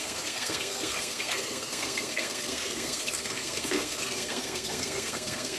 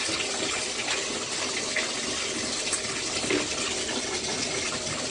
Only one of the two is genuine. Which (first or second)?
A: second